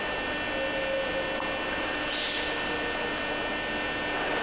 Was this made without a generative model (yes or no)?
yes